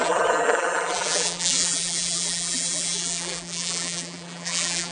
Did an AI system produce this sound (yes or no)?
yes